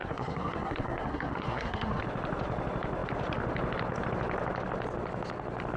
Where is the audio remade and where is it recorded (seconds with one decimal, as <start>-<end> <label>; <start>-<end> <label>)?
0.0-2.0 remade; 2.0-5.8 recorded